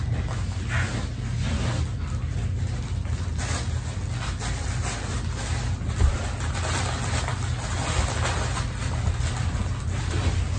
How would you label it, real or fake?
real